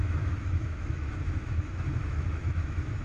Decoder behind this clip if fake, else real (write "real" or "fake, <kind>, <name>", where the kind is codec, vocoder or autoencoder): fake, autoencoder, DAC-VAE